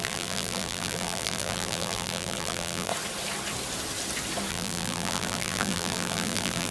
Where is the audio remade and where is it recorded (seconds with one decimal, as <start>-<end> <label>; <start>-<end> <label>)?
0.0-2.9 remade; 2.9-4.5 recorded; 4.5-6.7 remade